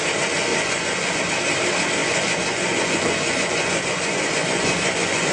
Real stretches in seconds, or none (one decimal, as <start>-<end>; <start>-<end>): 0.0-0.5; 1.2-2.0